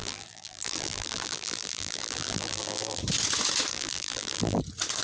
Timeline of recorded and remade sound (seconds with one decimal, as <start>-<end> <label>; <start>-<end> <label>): 0.0-3.0 remade; 3.0-3.7 recorded; 3.7-4.6 remade; 4.6-5.0 recorded